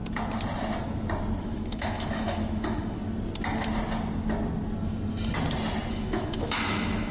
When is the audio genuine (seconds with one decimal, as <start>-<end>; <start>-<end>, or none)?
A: 0.0-1.4; 3.0-5.9

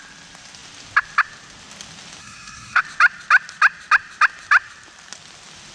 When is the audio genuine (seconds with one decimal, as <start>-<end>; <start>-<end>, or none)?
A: 0.0-2.2; 2.8-5.7

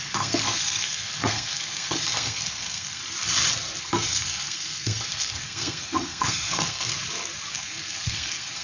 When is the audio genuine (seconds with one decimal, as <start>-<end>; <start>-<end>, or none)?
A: 3.0-3.8; 6.9-7.5